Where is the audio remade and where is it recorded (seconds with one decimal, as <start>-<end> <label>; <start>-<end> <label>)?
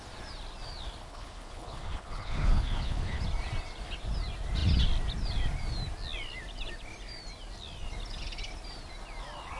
0.0-1.0 recorded; 1.0-3.2 remade; 3.2-9.6 recorded